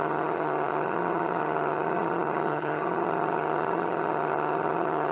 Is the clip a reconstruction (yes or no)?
yes